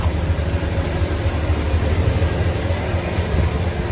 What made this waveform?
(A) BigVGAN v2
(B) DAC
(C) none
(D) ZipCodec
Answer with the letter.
C